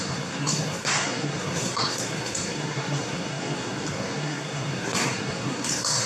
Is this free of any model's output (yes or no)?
no